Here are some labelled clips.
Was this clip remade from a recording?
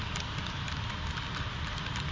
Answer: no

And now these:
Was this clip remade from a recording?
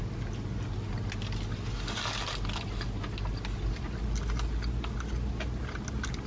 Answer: no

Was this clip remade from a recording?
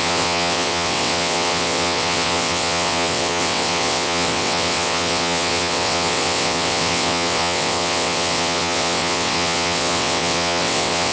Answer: yes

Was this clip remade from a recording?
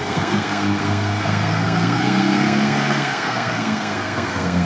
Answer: yes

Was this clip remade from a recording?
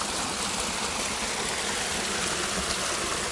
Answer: no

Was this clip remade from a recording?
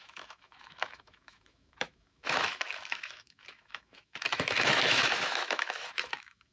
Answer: yes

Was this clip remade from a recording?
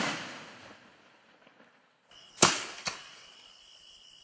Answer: no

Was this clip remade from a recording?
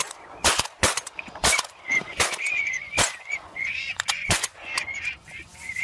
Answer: yes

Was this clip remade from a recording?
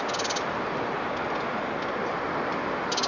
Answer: no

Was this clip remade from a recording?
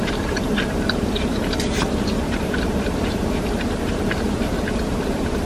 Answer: yes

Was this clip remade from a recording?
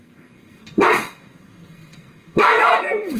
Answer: yes